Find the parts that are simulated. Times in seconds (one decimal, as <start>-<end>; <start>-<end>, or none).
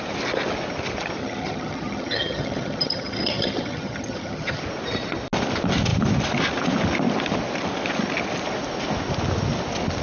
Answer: 1.2-4.6